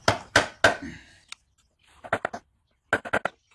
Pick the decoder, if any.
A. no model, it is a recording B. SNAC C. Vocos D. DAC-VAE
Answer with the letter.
A